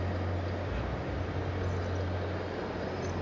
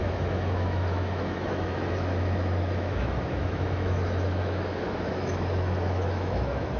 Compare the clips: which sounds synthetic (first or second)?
second